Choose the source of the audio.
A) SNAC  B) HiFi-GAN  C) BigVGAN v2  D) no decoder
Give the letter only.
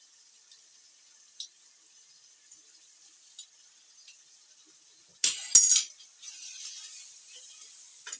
D